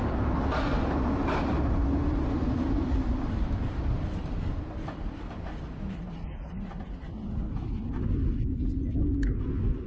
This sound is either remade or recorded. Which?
recorded